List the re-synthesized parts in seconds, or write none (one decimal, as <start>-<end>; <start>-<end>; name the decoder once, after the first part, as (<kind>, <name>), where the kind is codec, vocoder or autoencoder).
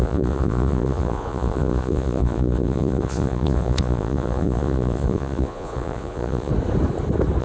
0.0-6.5 (vocoder, Vocos)